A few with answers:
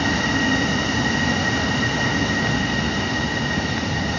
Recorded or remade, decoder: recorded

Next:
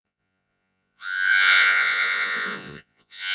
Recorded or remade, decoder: remade, vocoder, Vocos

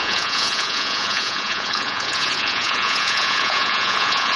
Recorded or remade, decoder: remade, vocoder, Vocos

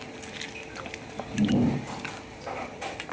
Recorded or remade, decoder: recorded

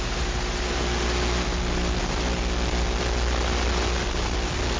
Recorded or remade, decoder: recorded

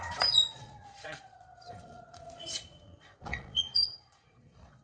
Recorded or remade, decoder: remade, vocoder, Vocos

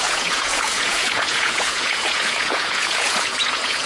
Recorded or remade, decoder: remade, vocoder, Vocos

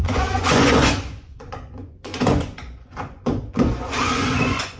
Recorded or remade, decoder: remade, vocoder, Vocos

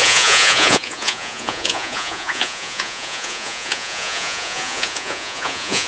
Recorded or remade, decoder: remade, vocoder, Vocos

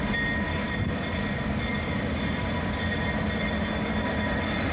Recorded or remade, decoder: recorded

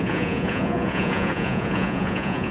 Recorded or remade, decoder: remade, vocoder, Vocos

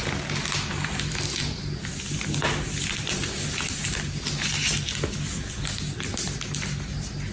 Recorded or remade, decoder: recorded